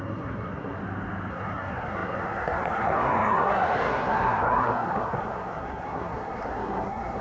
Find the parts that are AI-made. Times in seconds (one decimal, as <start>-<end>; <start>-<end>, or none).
0.0-0.8; 1.3-7.2

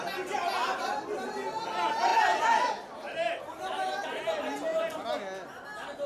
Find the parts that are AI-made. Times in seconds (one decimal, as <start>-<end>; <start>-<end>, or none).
none

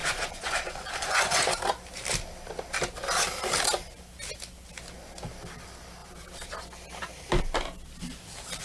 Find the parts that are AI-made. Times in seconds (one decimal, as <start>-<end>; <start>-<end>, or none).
0.0-1.6

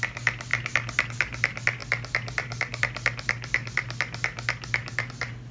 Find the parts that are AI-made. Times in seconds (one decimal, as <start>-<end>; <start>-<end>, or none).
none

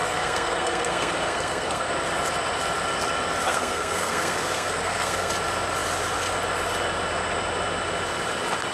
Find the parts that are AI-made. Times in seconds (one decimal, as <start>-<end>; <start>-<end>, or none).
0.0-1.9; 3.5-5.3

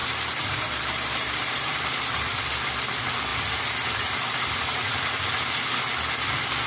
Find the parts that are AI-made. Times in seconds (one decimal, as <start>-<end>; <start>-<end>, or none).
0.0-2.5; 3.3-5.2

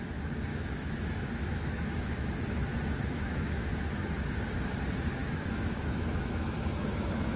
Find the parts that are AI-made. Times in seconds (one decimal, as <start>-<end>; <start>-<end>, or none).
0.5-3.7; 5.2-7.4

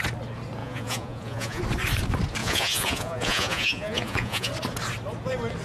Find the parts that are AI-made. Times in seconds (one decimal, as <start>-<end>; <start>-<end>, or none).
0.6-1.6; 2.4-4.5